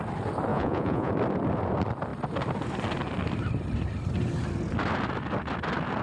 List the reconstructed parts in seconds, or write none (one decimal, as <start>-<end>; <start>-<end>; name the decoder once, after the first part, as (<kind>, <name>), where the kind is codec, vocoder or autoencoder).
0.5-1.1 (vocoder, Vocos)